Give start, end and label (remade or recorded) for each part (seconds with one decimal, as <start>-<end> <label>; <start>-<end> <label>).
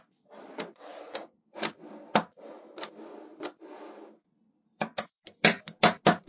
0.0-0.9 recorded; 0.9-1.6 remade; 1.6-6.3 recorded